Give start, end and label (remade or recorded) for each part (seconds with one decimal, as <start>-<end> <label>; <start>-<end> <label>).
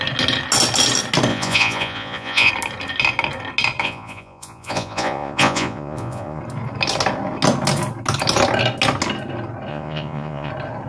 0.0-1.3 recorded; 1.3-2.5 remade; 2.5-3.8 recorded; 3.8-6.4 remade; 6.4-9.7 recorded; 9.7-10.5 remade; 10.5-10.9 recorded